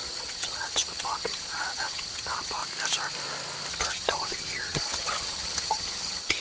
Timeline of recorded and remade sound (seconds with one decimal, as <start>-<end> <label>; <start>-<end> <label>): 0.0-2.6 remade; 2.6-3.7 recorded; 3.7-6.4 remade